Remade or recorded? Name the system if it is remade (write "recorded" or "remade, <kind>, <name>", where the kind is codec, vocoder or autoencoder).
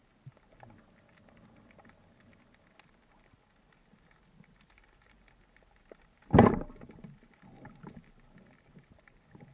recorded